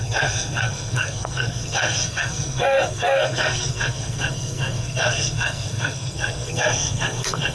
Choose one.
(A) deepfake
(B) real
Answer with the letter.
A